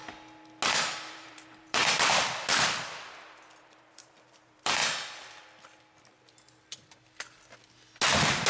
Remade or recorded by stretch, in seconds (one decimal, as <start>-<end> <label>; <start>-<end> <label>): 0.0-1.1 recorded; 1.1-1.8 remade; 1.8-3.6 recorded; 3.6-4.8 remade; 4.8-8.5 recorded